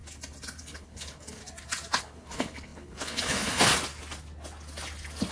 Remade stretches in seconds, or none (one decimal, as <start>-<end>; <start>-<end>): 0.6-1.4; 2.0-3.7